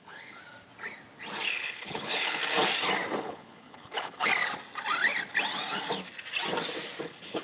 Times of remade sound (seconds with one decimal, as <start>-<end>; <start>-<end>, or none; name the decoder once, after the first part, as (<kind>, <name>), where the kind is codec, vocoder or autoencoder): 0.0-0.4 (codec, HILCodec); 1.5-2.4; 3.2-4.3; 7.0-7.4